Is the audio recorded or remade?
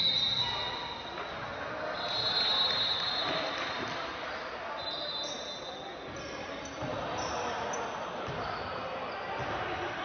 recorded